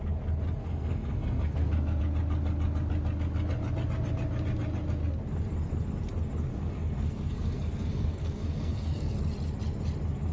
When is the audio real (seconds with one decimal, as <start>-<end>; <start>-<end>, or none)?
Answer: 0.0-0.6; 2.0-6.5; 9.1-10.3